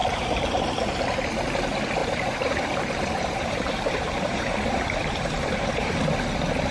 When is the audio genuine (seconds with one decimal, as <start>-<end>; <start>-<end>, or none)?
0.9-2.0; 6.0-6.7